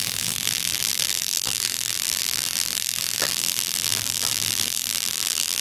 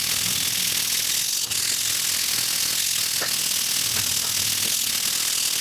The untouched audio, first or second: second